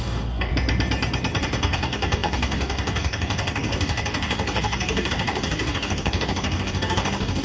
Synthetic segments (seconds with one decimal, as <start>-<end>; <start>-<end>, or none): 0.0-0.5; 1.4-7.4